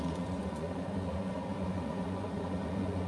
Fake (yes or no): yes